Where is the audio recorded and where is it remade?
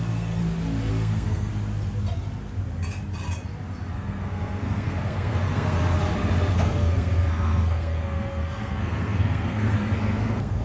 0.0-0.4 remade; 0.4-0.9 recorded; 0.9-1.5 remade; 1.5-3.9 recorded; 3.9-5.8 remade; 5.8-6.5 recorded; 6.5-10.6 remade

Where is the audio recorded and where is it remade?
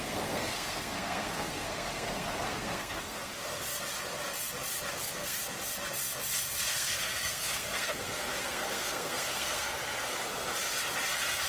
0.0-3.3 remade; 3.3-5.0 recorded; 5.0-5.4 remade; 5.4-6.7 recorded; 6.7-9.8 remade; 9.8-11.5 recorded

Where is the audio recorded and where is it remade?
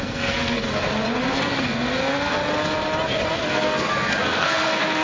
0.0-0.6 remade; 0.6-1.3 recorded; 1.3-2.4 remade; 2.4-3.4 recorded; 3.4-5.0 remade